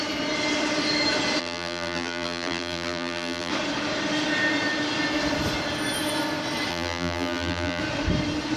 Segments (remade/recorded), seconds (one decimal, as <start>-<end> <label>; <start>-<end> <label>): 0.0-1.4 recorded; 1.4-3.5 remade; 3.5-6.7 recorded; 6.7-7.8 remade; 7.8-8.6 recorded